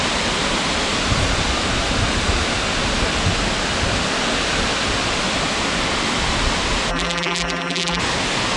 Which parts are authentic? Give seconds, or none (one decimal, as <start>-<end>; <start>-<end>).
0.0-6.9; 8.0-8.6